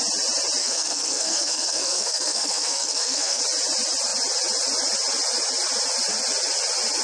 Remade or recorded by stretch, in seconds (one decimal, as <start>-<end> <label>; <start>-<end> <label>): 0.0-0.6 recorded; 0.6-3.4 remade; 3.4-7.0 recorded